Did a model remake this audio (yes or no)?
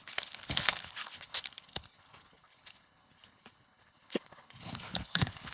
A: yes